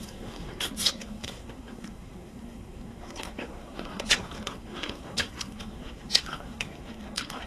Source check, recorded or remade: remade